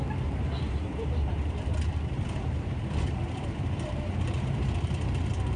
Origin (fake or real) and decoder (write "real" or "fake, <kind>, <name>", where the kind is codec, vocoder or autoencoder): fake, vocoder, BigVGAN v2